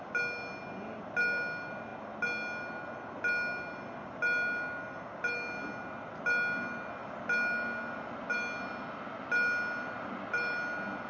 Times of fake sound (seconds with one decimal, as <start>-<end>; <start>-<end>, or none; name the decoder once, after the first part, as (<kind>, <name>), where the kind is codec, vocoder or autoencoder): none